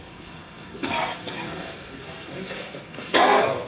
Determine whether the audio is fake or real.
fake